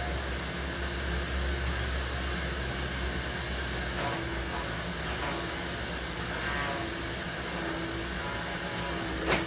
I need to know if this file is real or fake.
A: real